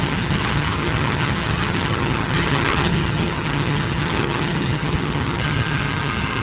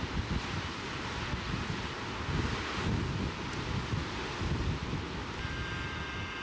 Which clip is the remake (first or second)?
first